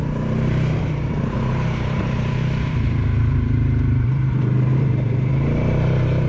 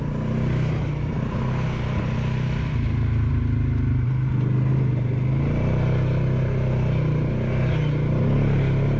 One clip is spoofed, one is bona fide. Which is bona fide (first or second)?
second